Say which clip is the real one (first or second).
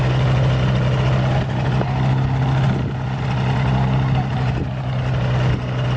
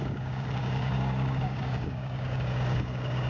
first